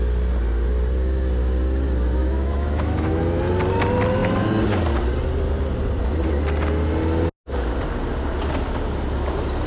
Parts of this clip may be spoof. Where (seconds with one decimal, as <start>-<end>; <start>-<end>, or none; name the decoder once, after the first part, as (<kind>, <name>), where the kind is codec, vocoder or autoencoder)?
2.2-3.1 (autoencoder, DAC-VAE)